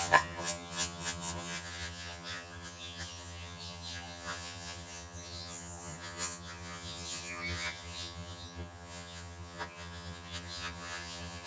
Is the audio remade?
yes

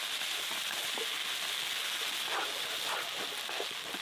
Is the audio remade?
no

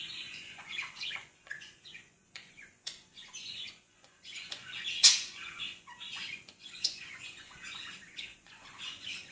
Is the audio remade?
yes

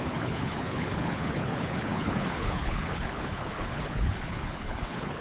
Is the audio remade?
yes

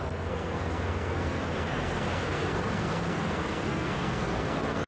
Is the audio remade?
yes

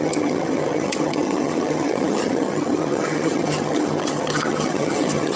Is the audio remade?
yes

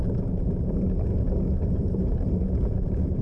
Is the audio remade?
yes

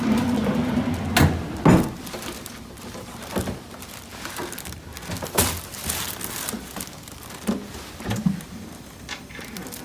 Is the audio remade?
no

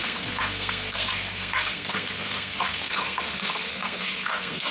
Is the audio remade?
yes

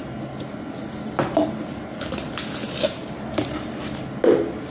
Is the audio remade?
no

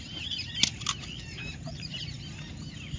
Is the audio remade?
no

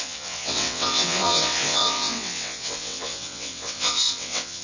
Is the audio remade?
yes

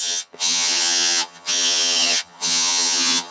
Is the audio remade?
yes